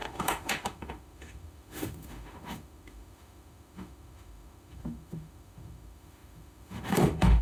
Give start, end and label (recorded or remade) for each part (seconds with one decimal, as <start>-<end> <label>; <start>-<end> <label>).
0.0-7.4 remade